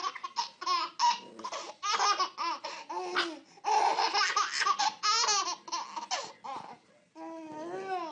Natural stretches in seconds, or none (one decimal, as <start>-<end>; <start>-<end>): 0.0-8.1